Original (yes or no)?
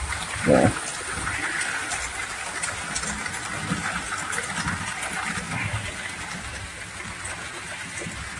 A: yes